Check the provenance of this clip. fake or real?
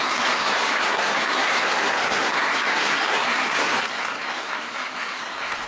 fake